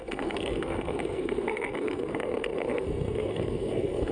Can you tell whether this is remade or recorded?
remade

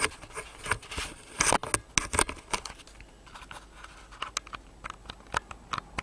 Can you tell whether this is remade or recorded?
recorded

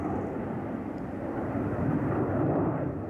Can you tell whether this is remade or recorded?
remade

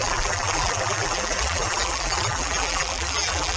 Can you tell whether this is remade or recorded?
remade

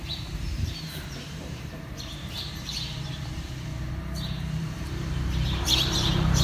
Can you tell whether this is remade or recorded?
remade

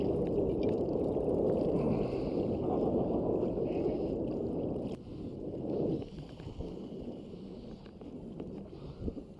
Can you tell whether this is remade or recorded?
recorded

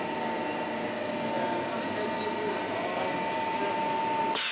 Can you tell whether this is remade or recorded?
recorded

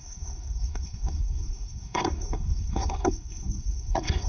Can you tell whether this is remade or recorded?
remade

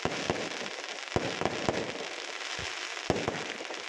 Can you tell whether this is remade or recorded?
recorded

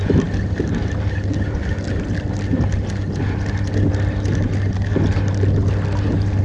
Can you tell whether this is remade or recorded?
recorded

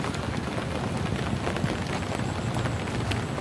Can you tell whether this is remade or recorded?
recorded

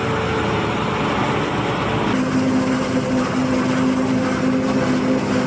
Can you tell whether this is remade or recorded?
recorded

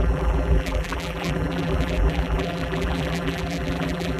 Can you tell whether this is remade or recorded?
remade